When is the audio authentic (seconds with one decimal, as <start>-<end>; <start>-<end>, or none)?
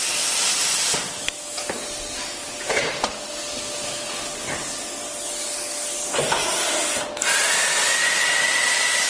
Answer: 0.0-9.1